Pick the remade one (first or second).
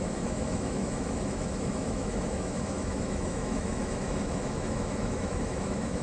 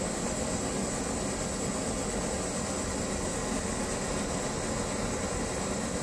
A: first